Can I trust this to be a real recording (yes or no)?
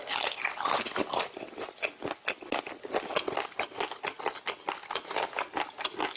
yes